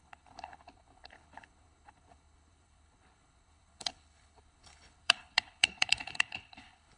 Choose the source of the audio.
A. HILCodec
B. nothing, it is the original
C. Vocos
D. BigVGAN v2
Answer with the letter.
A